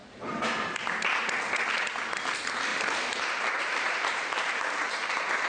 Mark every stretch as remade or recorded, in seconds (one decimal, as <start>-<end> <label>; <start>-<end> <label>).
0.0-0.9 remade; 0.9-2.7 recorded; 2.7-4.9 remade; 4.9-5.5 recorded

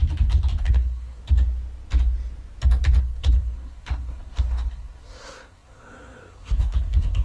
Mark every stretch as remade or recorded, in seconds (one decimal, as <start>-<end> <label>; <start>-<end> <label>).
0.0-0.6 recorded; 0.6-1.2 remade; 1.2-3.0 recorded; 3.0-7.2 remade

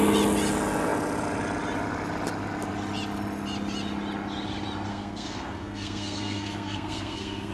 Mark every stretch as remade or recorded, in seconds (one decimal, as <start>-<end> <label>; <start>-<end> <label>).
0.0-4.9 recorded; 4.9-7.5 remade

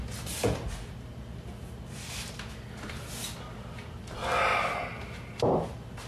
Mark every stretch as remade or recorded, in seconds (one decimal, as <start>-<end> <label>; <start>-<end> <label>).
0.0-6.1 recorded

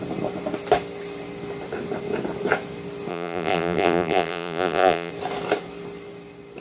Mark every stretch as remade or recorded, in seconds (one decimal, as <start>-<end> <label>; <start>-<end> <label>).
0.0-3.1 recorded; 3.1-5.1 remade; 5.1-6.6 recorded

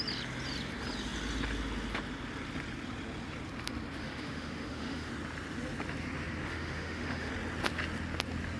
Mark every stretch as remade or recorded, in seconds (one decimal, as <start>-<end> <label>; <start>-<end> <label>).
0.0-4.0 recorded; 4.0-5.1 remade; 5.1-6.5 recorded; 6.5-7.3 remade; 7.3-8.6 recorded

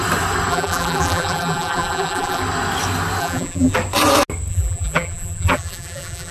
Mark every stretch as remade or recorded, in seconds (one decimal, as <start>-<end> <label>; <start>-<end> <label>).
0.0-0.5 recorded; 0.5-2.4 remade; 2.4-3.2 recorded; 3.2-3.8 remade; 3.8-4.5 recorded; 4.5-6.3 remade